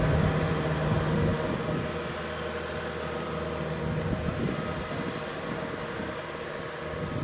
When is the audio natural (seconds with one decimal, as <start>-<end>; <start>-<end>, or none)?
0.0-7.2